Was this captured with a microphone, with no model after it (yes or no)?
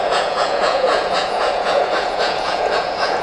no